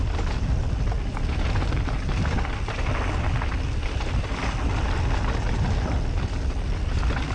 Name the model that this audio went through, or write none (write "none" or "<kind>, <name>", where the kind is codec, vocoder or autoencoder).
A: none